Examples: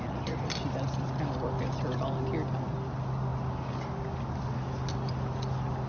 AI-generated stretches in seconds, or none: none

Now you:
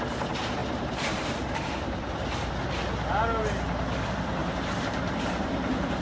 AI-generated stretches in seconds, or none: 0.6-2.5 (vocoder, BigVGAN v2); 4.4-6.0

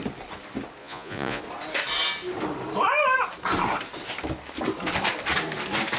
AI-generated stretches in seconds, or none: 0.8-1.4 (vocoder, Vocos)

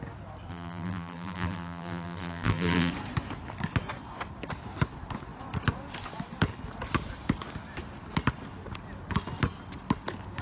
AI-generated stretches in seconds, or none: 0.5-2.9 (vocoder, BigVGAN v2)

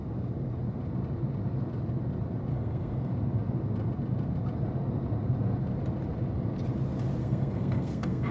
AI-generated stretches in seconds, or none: 2.5-3.1 (codec, SNAC); 7.2-8.3

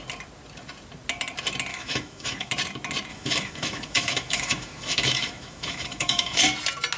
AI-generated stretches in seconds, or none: 1.7-2.5 (autoencoder, DAC-VAE); 3.1-6.4